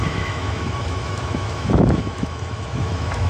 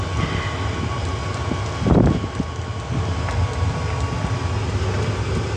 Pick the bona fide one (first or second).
second